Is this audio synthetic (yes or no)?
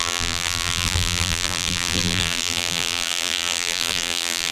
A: yes